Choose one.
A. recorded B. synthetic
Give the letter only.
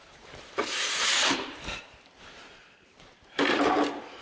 B